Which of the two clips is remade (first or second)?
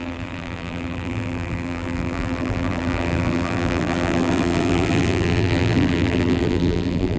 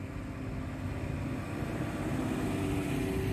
first